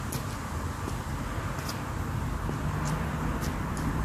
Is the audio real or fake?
real